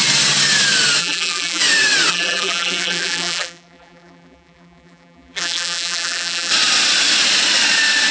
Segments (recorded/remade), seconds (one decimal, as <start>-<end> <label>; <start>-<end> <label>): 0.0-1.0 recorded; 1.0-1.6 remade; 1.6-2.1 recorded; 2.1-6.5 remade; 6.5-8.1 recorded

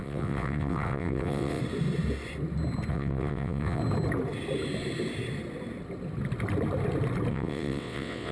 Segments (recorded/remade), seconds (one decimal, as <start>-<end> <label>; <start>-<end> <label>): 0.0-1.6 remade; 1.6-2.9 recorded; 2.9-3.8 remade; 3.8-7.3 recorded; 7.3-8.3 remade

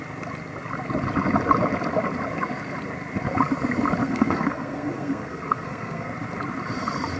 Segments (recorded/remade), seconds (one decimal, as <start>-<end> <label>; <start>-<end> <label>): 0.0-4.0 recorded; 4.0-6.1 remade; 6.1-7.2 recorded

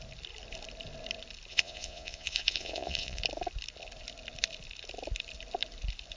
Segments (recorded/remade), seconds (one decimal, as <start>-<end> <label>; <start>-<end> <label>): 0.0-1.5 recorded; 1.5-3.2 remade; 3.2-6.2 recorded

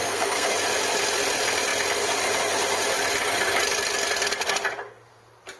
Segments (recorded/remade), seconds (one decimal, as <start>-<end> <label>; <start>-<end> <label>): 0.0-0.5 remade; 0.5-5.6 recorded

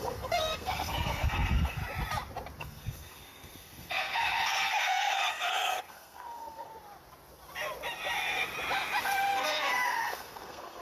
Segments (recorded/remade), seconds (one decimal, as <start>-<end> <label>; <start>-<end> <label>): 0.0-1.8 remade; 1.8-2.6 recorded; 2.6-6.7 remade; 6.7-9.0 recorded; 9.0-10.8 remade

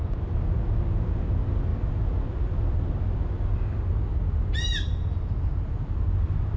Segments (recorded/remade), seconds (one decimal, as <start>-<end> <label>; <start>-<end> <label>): 0.0-6.6 recorded